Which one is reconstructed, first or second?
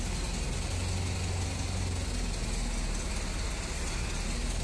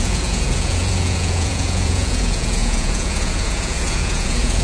second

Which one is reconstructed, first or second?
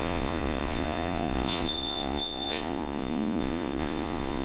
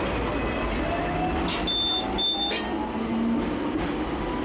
first